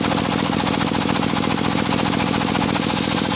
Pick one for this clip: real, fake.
real